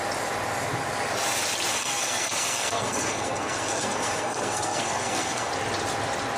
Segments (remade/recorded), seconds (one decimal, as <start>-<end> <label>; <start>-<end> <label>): 0.0-1.7 recorded; 1.7-5.5 remade; 5.5-6.4 recorded